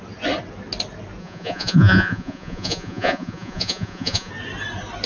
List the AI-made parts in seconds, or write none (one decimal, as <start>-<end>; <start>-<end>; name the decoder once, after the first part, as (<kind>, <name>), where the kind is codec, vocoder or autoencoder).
1.2-4.3 (vocoder, Vocos)